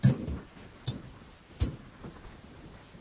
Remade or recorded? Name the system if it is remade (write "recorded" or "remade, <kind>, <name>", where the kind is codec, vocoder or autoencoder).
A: recorded